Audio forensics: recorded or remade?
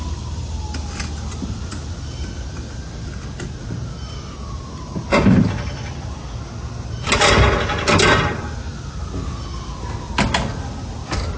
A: recorded